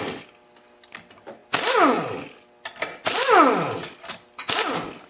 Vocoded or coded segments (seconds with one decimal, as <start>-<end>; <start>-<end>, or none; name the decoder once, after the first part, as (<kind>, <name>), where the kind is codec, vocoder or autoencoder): none